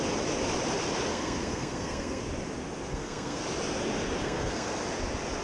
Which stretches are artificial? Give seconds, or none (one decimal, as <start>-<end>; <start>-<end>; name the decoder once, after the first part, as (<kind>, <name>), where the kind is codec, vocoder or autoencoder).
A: 1.1-2.2 (codec, SNAC); 2.9-3.4; 4.2-4.8